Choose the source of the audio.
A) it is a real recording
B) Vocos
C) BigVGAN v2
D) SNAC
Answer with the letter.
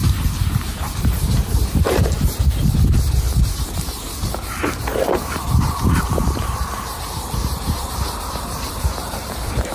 C